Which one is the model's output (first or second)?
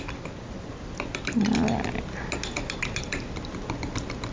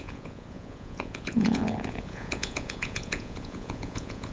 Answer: second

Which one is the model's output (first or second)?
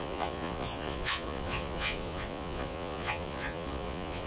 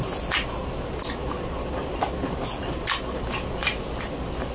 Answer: first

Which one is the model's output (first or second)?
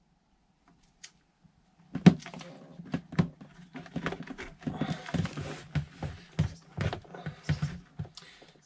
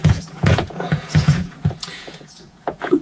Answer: second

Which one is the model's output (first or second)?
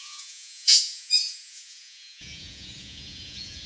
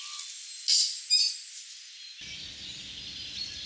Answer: first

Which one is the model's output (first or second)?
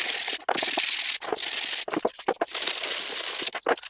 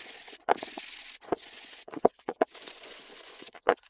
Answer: second